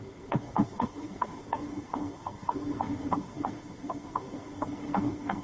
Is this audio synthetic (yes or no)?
yes